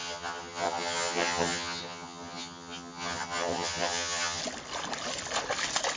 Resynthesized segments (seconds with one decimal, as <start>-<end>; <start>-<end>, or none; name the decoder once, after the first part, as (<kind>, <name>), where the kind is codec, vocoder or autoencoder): 0.0-4.4 (vocoder, HiFi-GAN)